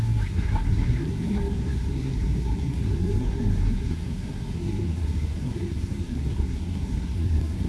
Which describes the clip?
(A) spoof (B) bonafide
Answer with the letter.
A